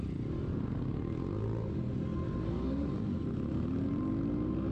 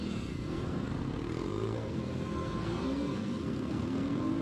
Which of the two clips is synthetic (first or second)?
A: second